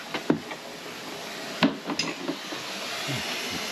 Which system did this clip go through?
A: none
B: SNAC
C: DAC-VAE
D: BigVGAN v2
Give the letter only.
A